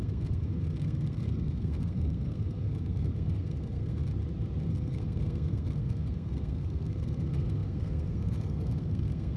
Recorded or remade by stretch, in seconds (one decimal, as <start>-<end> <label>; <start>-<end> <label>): 0.0-4.0 remade; 4.0-4.7 recorded; 4.7-9.4 remade